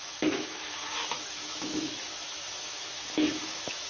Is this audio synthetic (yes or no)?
yes